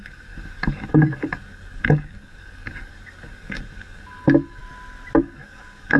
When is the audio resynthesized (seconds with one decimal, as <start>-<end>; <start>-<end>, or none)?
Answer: 0.0-4.6; 5.2-6.0